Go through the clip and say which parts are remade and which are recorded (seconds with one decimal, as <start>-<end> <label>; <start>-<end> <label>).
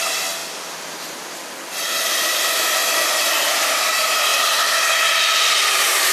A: 0.0-2.8 remade; 2.8-3.5 recorded; 3.5-4.3 remade; 4.3-5.2 recorded; 5.2-6.1 remade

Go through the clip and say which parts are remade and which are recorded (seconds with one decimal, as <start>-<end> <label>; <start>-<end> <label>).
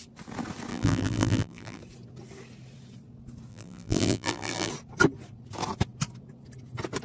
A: 0.0-0.7 recorded; 0.7-1.8 remade; 1.8-3.5 recorded; 3.5-4.7 remade; 4.7-7.0 recorded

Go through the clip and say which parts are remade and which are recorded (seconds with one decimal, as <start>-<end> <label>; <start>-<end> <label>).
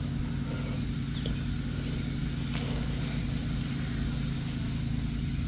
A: 0.0-5.5 recorded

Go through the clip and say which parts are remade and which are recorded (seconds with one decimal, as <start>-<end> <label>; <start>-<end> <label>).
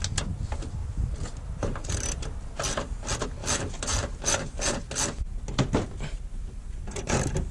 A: 0.0-7.5 recorded